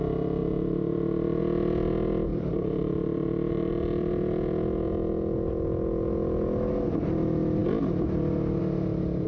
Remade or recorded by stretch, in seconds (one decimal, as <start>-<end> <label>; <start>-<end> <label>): 0.0-0.4 recorded; 0.4-1.4 remade; 1.4-2.3 recorded; 2.3-3.7 remade; 3.7-9.3 recorded

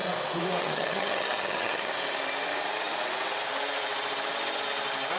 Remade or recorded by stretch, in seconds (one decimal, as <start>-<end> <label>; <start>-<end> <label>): 0.0-0.6 recorded; 0.6-1.9 remade; 1.9-5.2 recorded

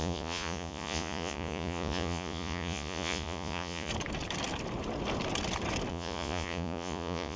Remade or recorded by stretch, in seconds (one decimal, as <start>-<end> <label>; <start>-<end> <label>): 0.0-3.9 remade; 3.9-5.9 recorded; 5.9-7.4 remade

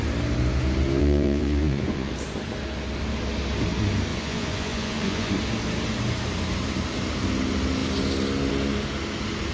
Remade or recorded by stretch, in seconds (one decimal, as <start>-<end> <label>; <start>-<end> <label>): 0.0-1.0 recorded; 1.0-2.1 remade; 2.1-4.1 recorded; 4.1-5.3 remade; 5.3-9.5 recorded

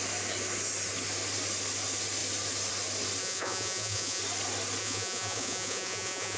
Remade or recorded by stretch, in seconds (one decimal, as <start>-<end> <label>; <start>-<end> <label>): 0.0-3.2 recorded; 3.2-4.2 remade; 4.2-4.8 recorded; 4.8-6.4 remade

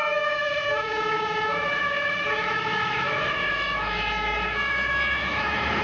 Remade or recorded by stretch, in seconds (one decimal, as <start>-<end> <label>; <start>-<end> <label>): 0.0-5.8 remade

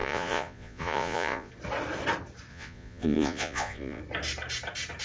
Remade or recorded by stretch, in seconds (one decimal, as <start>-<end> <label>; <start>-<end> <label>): 0.0-1.5 remade; 1.5-2.5 recorded; 2.5-4.0 remade; 4.0-5.0 recorded

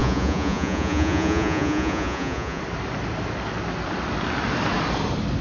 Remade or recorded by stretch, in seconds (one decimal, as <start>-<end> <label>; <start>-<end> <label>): 0.0-2.6 remade; 2.6-5.4 recorded